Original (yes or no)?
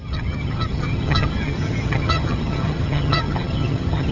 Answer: no